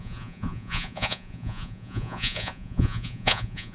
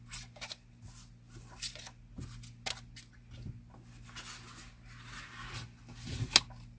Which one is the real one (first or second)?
second